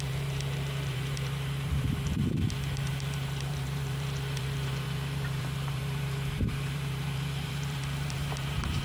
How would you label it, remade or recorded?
remade